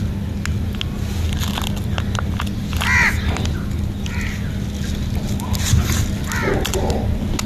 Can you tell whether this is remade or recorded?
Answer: recorded